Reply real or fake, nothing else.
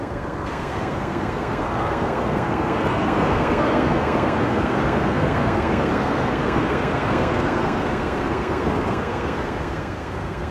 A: fake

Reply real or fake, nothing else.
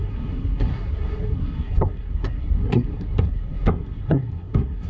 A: fake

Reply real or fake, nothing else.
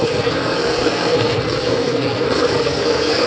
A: fake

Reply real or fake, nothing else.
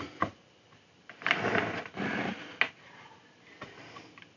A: real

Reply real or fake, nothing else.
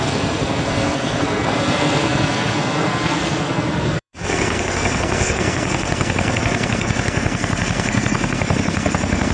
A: fake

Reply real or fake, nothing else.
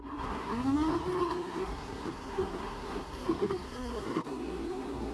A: fake